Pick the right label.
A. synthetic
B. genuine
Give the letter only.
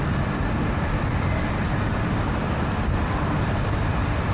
B